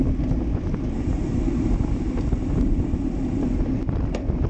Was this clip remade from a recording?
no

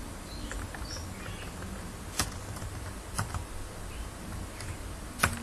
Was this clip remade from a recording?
no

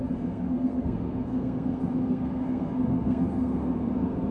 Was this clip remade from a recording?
yes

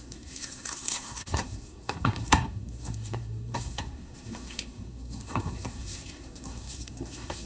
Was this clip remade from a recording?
yes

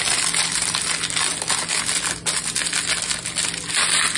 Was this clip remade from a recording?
no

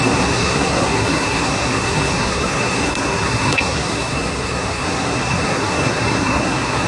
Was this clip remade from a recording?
yes